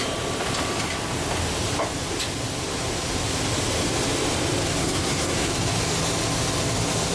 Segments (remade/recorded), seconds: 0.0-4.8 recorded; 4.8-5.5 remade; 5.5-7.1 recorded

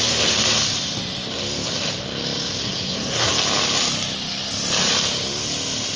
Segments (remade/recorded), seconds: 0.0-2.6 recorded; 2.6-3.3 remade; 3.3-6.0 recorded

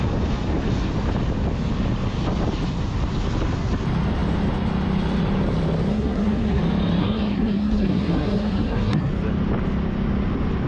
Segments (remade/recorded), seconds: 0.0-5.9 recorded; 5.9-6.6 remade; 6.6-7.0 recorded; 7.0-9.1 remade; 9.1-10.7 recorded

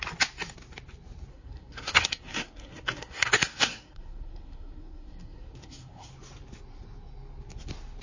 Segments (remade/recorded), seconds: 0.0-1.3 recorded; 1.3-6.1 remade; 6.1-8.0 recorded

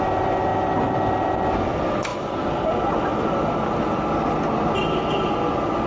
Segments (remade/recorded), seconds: 0.0-5.9 recorded